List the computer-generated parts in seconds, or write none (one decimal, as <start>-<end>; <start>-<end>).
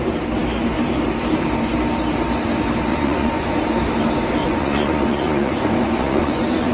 2.9-3.6; 4.4-6.7